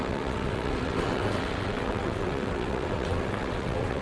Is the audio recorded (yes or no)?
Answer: no